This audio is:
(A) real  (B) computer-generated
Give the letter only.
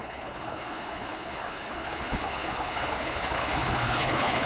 B